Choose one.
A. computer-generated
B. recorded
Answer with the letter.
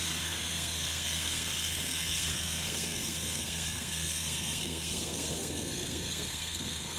A